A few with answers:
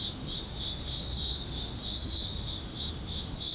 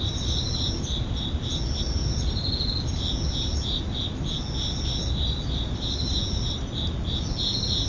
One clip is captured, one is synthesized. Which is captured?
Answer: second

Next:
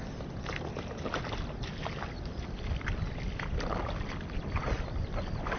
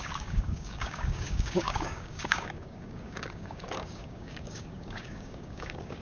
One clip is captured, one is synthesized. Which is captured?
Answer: first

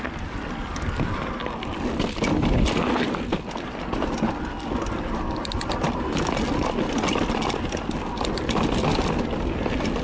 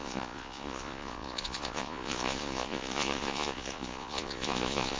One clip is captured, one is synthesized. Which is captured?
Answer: first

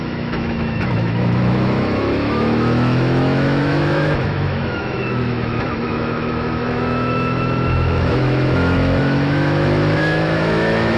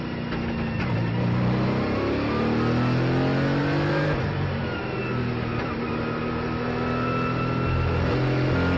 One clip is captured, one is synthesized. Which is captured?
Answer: second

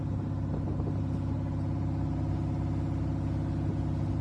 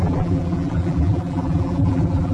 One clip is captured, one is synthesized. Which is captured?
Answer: first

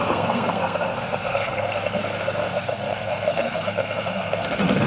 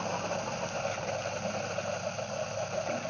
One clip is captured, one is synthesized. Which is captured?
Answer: second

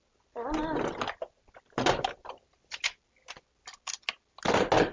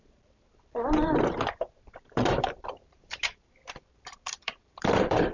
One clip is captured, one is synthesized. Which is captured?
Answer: first